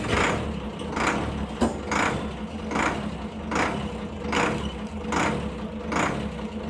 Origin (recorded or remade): recorded